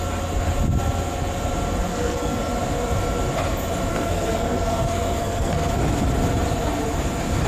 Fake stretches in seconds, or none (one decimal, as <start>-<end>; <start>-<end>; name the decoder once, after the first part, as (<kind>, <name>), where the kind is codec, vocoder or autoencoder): 1.9-2.4 (codec, SNAC); 3.9-5.7